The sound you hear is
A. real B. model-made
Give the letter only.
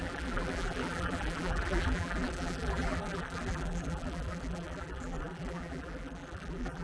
B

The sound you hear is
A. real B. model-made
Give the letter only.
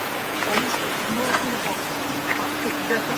B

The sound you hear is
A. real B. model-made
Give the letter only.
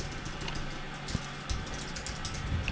A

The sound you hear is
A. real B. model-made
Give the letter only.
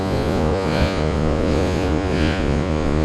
B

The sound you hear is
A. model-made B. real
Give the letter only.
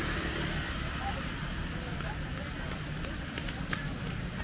A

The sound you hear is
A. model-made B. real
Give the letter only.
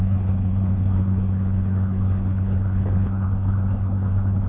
A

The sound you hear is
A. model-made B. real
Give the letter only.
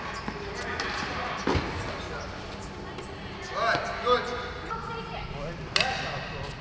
B